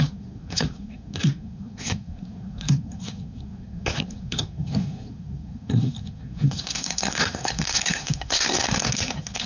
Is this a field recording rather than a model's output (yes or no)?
no